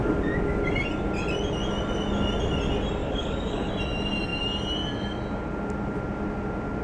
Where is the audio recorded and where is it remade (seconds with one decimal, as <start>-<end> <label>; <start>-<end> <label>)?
0.0-3.0 recorded; 3.0-3.7 remade; 3.7-6.8 recorded